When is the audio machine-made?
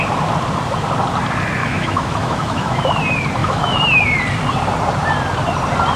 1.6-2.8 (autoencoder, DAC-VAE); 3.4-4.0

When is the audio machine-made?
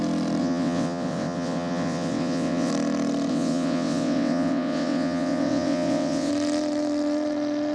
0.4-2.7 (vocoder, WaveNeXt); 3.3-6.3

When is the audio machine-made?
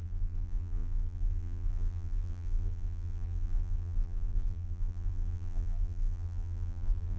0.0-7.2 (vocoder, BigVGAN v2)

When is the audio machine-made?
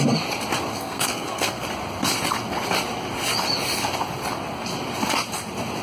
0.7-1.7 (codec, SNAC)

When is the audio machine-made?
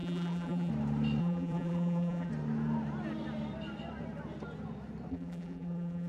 0.0-0.7 (vocoder, BigVGAN v2); 1.2-2.3; 5.1-6.1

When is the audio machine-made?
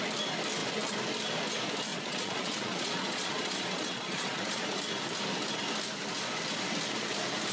1.9-4.8 (vocoder, Vocos)